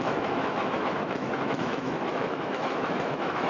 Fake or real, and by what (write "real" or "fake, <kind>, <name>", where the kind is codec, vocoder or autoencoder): fake, autoencoder, DAC-VAE